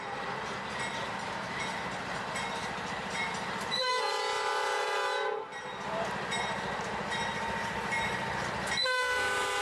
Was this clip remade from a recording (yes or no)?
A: yes